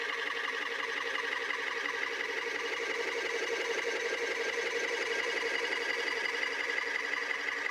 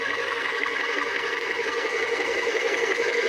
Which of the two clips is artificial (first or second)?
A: second